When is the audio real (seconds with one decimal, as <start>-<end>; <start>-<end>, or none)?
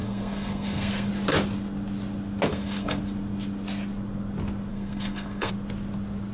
1.1-2.5; 3.0-4.7; 5.5-6.3